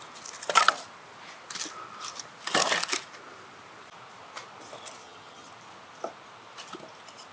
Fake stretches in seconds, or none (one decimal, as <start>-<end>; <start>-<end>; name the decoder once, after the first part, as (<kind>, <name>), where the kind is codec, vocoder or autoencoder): 5.0-5.5 (vocoder, HiFi-GAN)